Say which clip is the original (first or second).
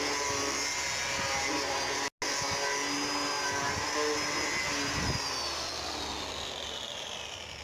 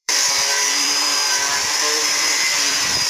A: first